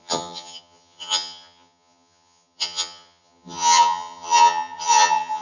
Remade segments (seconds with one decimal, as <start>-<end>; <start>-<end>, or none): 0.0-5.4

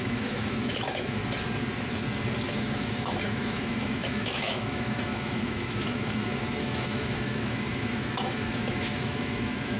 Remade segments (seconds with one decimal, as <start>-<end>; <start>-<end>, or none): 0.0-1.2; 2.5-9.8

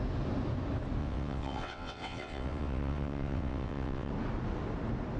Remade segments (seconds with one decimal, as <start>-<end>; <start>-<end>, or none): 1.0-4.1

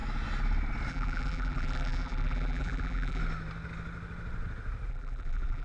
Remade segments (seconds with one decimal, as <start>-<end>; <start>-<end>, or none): 0.9-3.2; 4.9-5.6